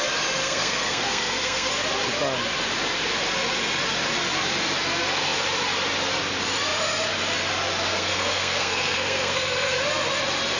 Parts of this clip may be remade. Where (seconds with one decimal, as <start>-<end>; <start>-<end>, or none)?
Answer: 0.4-1.7; 7.9-9.8